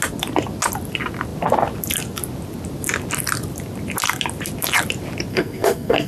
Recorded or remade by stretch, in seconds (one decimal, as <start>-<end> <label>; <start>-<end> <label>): 0.0-5.3 recorded; 5.3-6.1 remade